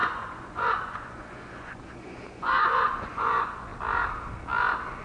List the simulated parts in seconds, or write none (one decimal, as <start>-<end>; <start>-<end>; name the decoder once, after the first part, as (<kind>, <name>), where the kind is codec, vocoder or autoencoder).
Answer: 0.0-3.7 (vocoder, Vocos)